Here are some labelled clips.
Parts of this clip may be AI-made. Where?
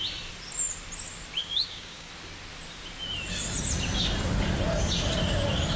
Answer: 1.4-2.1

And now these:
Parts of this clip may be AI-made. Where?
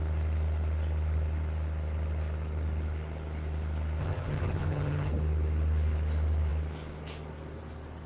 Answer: 4.0-5.1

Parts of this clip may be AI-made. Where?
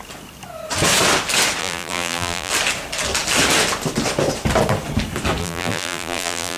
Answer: 1.6-2.5; 5.4-6.6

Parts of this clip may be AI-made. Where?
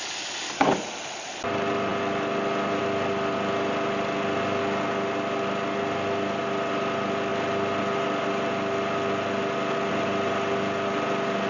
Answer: none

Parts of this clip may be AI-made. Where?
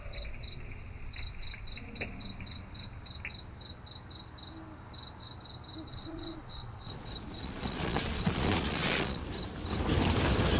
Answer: 5.9-9.2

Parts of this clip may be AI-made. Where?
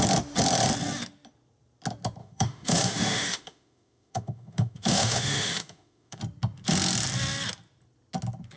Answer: 2.2-6.2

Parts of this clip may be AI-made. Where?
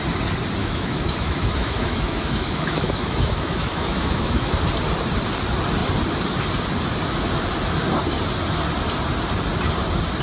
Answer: 0.6-4.5